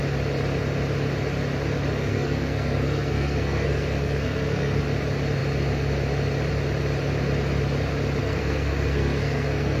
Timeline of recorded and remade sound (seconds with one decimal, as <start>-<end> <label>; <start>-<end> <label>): 0.0-2.0 recorded; 2.0-4.8 remade; 4.8-8.2 recorded; 8.2-9.8 remade